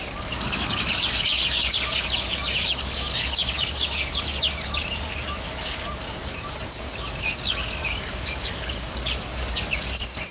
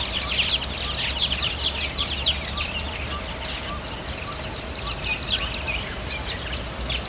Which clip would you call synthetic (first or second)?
first